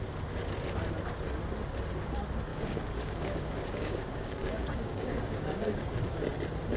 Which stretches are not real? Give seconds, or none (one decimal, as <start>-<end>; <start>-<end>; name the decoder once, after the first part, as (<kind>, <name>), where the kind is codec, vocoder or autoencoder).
2.5-6.0 (codec, DAC)